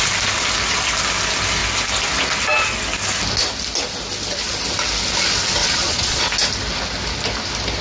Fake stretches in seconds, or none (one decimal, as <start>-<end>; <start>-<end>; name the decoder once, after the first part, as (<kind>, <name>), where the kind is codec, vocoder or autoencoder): 5.6-6.2 (vocoder, Vocos)